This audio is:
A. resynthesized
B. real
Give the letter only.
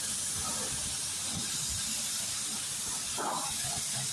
B